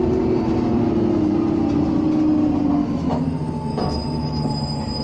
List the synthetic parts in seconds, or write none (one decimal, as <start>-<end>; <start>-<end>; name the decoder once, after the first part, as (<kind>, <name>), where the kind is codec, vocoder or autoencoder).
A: 2.8-3.8 (autoencoder, DAC-VAE)